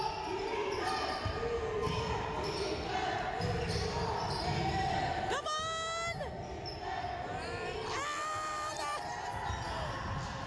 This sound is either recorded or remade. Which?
recorded